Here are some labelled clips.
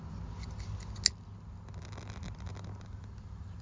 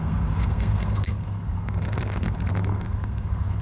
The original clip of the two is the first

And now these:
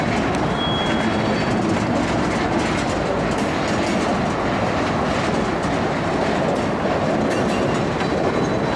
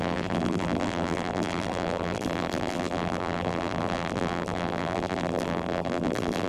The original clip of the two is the first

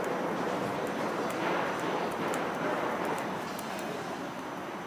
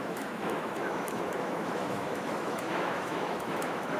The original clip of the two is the first